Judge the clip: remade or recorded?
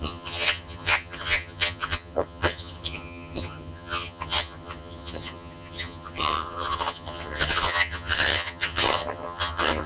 remade